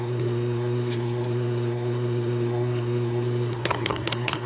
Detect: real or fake fake